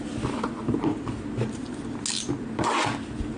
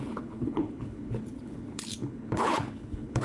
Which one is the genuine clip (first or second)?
first